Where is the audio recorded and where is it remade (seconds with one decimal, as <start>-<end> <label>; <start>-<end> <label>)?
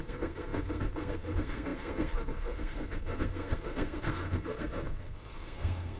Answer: 0.0-6.0 remade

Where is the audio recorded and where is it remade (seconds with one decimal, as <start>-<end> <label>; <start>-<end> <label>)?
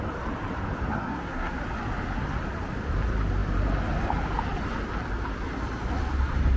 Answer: 0.0-0.9 recorded; 0.9-1.6 remade; 1.6-6.6 recorded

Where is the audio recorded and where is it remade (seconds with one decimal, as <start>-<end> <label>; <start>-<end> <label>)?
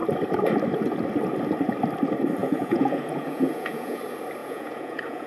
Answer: 0.0-2.4 recorded; 2.4-4.0 remade; 4.0-4.4 recorded; 4.4-5.3 remade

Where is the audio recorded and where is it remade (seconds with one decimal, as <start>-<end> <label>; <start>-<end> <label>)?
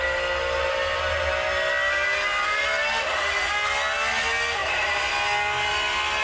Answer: 0.0-6.2 recorded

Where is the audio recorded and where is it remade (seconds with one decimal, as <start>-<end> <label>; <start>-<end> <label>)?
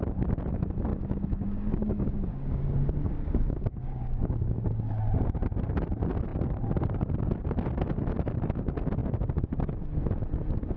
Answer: 0.0-0.9 recorded; 0.9-4.9 remade; 4.9-10.8 recorded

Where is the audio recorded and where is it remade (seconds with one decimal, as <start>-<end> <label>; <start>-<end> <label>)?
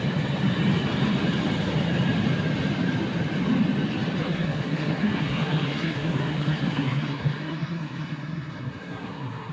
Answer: 0.0-4.2 recorded; 4.2-9.5 remade